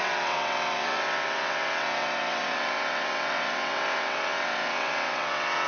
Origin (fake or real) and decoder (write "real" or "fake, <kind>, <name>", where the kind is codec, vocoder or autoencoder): fake, vocoder, WaveNeXt